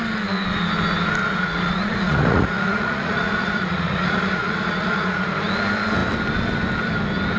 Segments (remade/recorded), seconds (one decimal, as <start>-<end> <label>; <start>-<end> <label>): 0.0-1.2 recorded; 1.2-5.3 remade; 5.3-7.4 recorded